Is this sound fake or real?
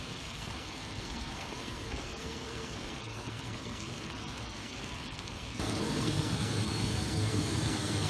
fake